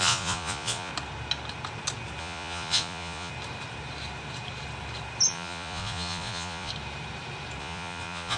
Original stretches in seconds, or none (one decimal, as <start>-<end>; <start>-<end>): 0.9-2.2; 3.3-5.3; 6.7-7.6